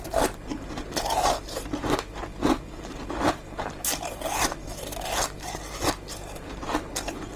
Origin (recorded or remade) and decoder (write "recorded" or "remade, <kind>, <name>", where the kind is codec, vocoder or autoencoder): recorded